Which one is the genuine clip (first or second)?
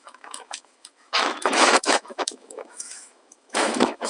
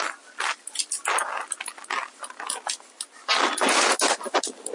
second